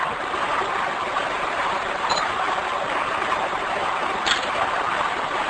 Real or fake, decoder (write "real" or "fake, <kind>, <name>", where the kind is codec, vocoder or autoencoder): fake, vocoder, BigVGAN v2